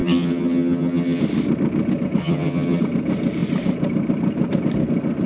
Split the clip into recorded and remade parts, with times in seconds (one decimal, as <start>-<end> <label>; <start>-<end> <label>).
0.0-1.2 remade; 1.2-2.2 recorded; 2.2-2.8 remade; 2.8-5.3 recorded